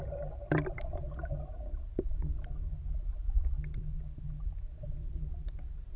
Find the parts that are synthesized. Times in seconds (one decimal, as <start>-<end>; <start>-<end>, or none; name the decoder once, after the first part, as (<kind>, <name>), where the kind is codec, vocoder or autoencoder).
none